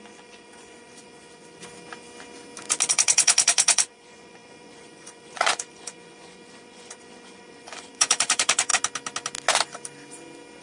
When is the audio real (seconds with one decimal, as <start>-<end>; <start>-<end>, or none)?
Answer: 1.6-2.9; 8.7-10.6